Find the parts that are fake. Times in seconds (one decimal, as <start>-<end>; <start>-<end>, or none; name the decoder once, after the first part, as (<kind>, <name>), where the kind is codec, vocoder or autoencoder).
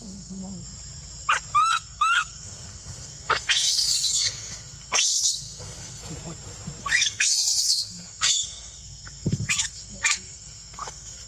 0.0-0.4 (codec, SNAC); 1.6-6.0; 6.8-11.3